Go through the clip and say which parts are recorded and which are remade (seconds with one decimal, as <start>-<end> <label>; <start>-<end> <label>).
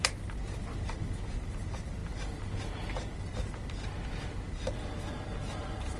0.0-6.0 recorded